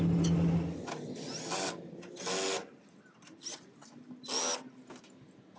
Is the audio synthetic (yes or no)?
no